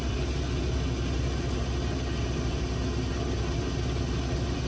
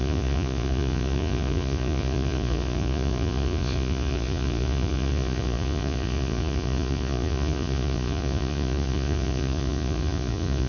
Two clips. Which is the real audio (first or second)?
first